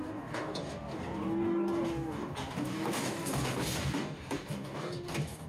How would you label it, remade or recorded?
remade